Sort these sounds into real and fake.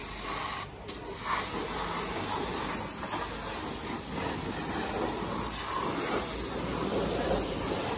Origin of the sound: real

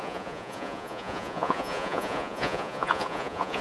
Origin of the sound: fake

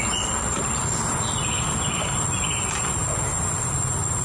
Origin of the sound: real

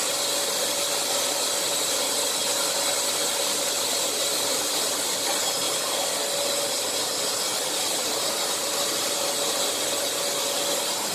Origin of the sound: real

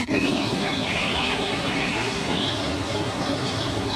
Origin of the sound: fake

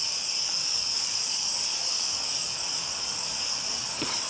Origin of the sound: fake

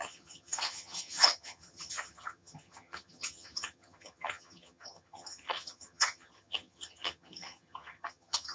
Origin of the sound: fake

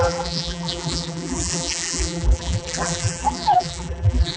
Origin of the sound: fake